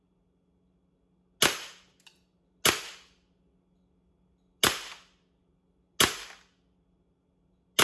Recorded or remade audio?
recorded